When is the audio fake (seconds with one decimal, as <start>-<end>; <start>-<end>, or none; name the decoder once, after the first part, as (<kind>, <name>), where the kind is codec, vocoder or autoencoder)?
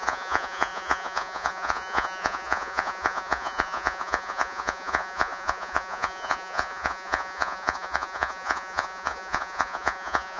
0.0-10.4 (vocoder, Vocos)